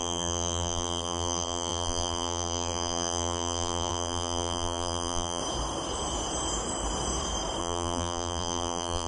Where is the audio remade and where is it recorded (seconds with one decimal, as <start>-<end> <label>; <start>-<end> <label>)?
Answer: 0.0-5.4 remade; 5.4-7.6 recorded; 7.6-9.1 remade